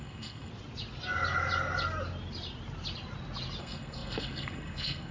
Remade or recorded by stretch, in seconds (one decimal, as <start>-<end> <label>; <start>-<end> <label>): 0.0-0.5 remade; 0.5-3.6 recorded; 3.6-5.1 remade